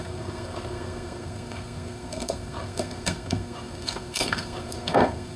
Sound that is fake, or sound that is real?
fake